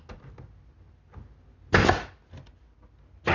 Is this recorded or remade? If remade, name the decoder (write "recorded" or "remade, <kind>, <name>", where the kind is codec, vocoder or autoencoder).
recorded